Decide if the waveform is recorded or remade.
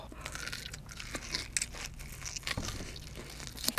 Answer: recorded